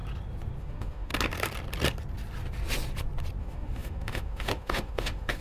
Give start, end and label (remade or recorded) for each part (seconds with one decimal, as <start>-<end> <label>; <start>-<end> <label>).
0.0-0.6 recorded; 0.6-1.1 remade; 1.1-3.4 recorded; 3.4-5.4 remade